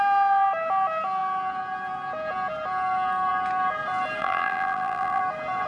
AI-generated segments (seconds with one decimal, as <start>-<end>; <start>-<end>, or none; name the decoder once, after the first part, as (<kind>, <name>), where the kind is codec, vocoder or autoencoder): 4.2-5.2 (vocoder, BigVGAN v2)